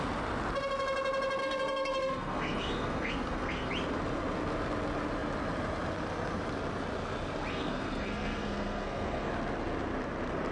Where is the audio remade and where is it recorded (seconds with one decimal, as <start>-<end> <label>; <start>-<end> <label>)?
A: 0.0-1.4 recorded; 1.4-3.7 remade; 3.7-7.5 recorded; 7.5-9.3 remade; 9.3-10.5 recorded